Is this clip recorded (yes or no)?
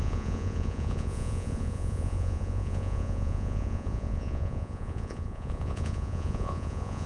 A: no